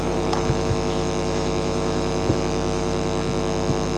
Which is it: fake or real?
fake